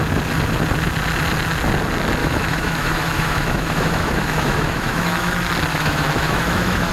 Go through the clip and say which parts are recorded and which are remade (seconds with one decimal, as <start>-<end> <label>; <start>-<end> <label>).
0.0-2.2 recorded; 2.2-5.3 remade; 5.3-5.7 recorded; 5.7-6.9 remade